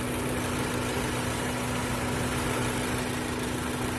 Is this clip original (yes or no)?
yes